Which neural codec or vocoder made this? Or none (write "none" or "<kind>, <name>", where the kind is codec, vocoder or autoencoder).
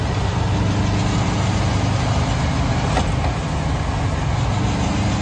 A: none